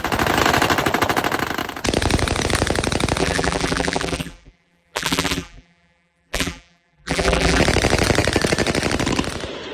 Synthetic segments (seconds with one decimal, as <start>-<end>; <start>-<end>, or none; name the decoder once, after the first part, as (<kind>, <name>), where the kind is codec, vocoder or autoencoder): 3.2-7.6 (vocoder, BigVGAN v2)